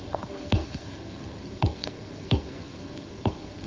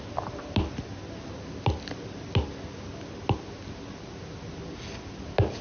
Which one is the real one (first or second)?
second